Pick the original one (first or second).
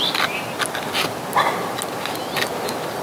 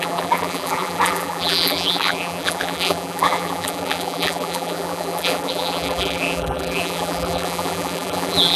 first